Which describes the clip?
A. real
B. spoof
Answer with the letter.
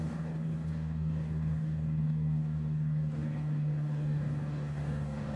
B